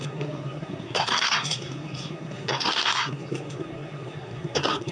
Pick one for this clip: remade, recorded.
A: remade